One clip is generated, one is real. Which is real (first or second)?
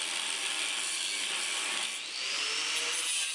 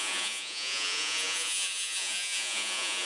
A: first